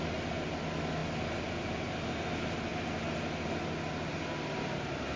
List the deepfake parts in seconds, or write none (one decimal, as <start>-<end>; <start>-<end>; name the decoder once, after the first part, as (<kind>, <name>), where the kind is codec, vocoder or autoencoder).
none